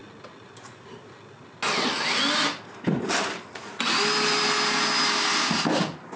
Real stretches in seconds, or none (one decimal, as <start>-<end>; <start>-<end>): 0.0-6.2